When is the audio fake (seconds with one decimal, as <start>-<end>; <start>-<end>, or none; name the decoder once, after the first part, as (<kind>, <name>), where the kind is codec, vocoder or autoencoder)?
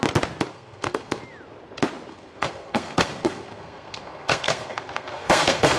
0.5-1.2 (codec, SNAC); 2.1-5.8